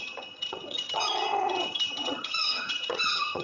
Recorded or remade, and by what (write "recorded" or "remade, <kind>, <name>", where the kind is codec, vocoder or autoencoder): remade, vocoder, HiFi-GAN